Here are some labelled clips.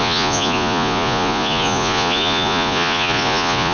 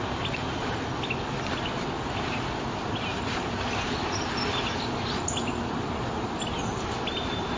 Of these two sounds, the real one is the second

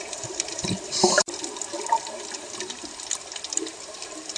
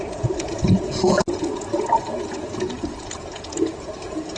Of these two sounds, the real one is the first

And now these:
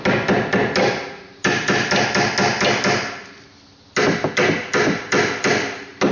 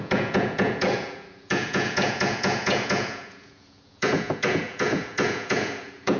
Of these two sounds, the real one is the first